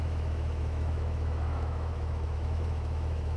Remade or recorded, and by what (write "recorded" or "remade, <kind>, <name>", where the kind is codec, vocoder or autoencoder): remade, autoencoder, DAC-VAE